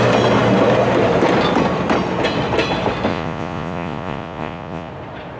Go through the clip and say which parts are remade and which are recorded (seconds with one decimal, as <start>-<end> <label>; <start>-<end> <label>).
0.0-3.1 recorded; 3.1-4.9 remade; 4.9-5.4 recorded